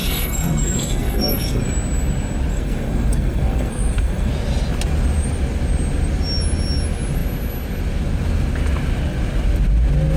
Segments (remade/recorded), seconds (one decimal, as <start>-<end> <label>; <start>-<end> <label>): 0.0-1.6 remade; 1.6-2.5 recorded; 2.5-4.3 remade; 4.3-10.2 recorded